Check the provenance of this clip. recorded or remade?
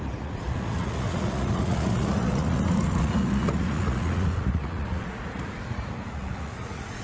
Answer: remade